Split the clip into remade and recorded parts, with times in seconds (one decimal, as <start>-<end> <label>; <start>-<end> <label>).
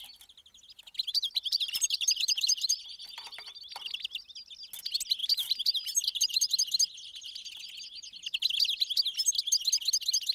0.0-1.1 recorded; 1.1-2.8 remade; 2.8-5.2 recorded; 5.2-6.5 remade; 6.5-10.3 recorded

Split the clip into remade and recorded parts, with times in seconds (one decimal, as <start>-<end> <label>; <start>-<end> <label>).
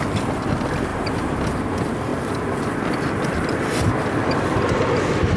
0.0-2.1 recorded; 2.1-5.0 remade; 5.0-5.4 recorded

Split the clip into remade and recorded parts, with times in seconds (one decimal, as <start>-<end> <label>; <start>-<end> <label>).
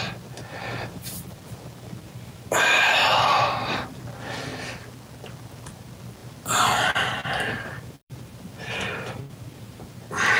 0.0-0.7 recorded; 0.7-4.0 remade; 4.0-6.2 recorded; 6.2-9.8 remade; 9.8-10.4 recorded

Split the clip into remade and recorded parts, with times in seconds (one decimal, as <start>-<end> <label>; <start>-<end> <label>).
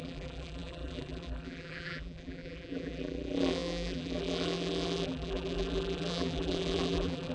0.0-7.3 remade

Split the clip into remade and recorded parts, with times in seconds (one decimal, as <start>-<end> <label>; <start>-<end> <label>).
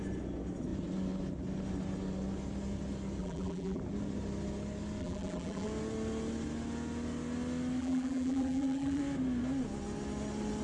0.0-3.2 recorded; 3.2-3.8 remade; 3.8-5.0 recorded; 5.0-5.7 remade; 5.7-7.8 recorded; 7.8-9.0 remade; 9.0-10.6 recorded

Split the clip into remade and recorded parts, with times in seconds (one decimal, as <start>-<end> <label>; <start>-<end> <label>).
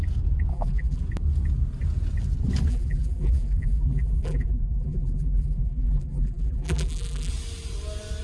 0.0-0.5 recorded; 0.5-1.0 remade; 1.0-2.7 recorded; 2.7-7.3 remade; 7.3-8.2 recorded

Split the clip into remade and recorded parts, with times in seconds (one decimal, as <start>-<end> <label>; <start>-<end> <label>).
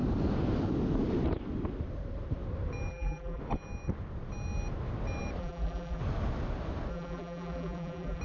0.0-2.9 recorded; 2.9-3.4 remade; 3.4-5.4 recorded; 5.4-6.0 remade; 6.0-6.9 recorded; 6.9-8.2 remade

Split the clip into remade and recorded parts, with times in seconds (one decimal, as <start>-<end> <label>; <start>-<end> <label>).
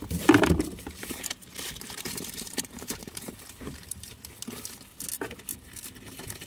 0.0-1.0 recorded; 1.0-4.1 remade; 4.1-5.5 recorded; 5.5-6.5 remade